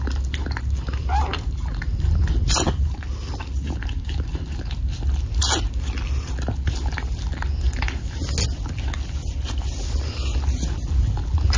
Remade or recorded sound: recorded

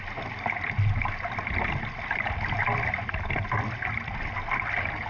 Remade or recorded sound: recorded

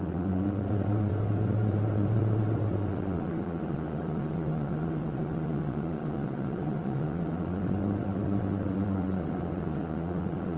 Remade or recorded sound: remade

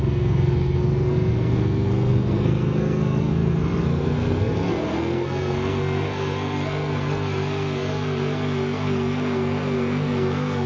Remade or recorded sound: remade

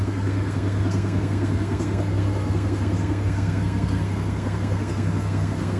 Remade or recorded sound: remade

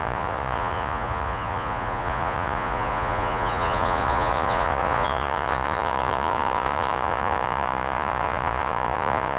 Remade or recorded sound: remade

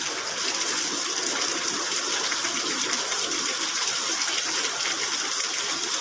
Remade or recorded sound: recorded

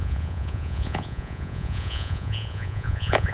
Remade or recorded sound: remade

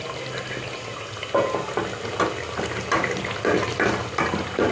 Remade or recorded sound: recorded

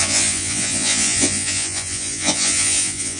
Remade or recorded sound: remade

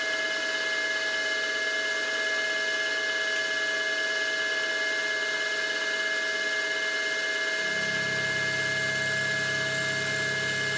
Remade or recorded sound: recorded